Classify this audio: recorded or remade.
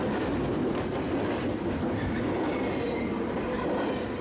recorded